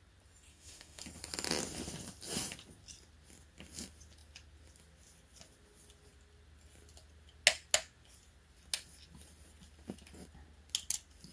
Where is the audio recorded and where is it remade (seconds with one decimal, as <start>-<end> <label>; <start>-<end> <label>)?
0.0-0.5 recorded; 0.5-1.0 remade; 1.0-11.3 recorded